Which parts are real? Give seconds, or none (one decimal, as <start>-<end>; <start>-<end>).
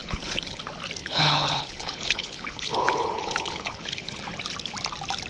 0.6-1.0; 4.2-5.3